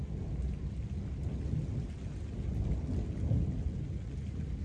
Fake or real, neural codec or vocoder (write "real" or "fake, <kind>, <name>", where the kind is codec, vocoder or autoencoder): real